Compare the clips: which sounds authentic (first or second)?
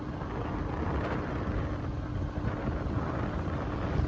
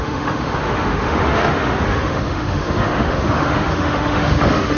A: first